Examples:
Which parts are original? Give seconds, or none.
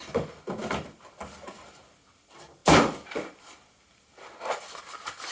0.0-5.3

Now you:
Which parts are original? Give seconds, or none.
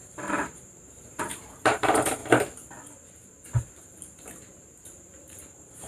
2.2-3.6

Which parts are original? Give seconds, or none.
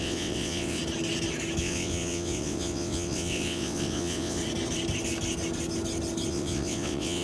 0.8-1.6; 4.4-6.3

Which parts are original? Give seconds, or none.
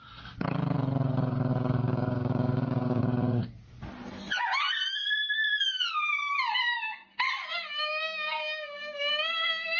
0.0-1.5; 3.0-7.5